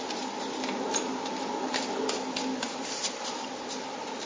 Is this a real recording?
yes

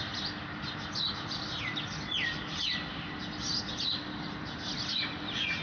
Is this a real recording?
yes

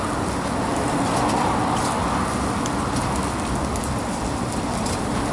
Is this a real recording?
yes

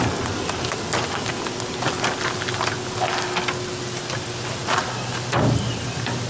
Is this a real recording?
yes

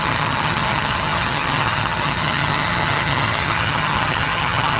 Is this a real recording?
no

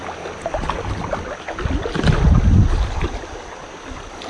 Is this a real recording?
yes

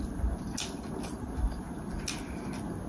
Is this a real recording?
yes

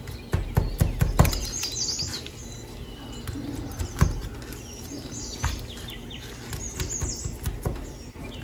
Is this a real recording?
yes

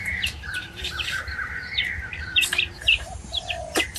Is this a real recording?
no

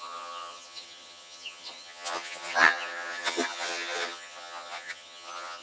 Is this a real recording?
no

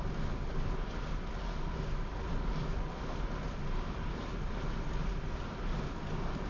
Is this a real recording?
yes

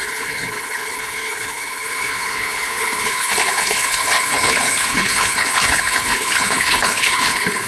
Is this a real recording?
no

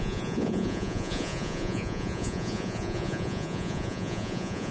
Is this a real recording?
no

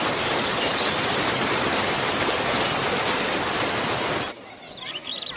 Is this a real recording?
no